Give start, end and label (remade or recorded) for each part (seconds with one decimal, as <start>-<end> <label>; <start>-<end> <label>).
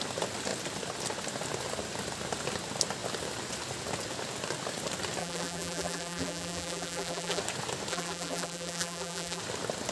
0.0-5.2 recorded; 5.2-7.4 remade; 7.4-7.9 recorded; 7.9-9.4 remade; 9.4-9.9 recorded